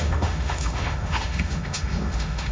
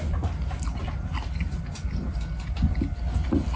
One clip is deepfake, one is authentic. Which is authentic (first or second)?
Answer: second